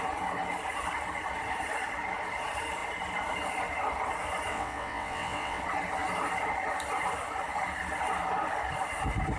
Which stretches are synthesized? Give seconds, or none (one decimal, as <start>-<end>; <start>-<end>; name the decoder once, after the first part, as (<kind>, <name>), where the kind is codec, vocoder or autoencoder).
4.5-5.6 (vocoder, WaveNeXt)